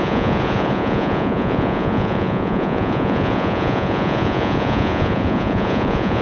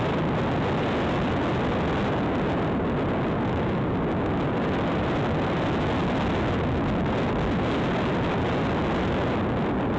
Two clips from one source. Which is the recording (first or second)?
second